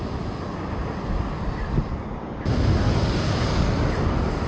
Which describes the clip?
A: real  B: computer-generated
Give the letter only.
A